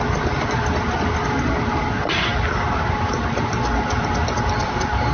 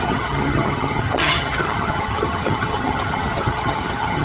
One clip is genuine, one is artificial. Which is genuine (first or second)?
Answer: first